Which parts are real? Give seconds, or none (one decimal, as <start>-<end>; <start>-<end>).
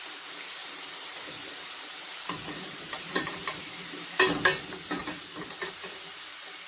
0.0-0.6; 4.6-5.0